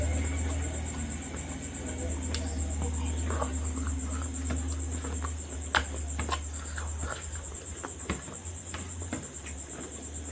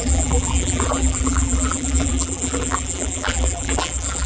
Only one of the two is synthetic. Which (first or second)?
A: second